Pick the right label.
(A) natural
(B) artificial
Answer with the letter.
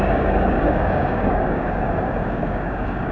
B